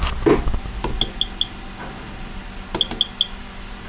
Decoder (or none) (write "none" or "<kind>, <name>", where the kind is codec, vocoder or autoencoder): none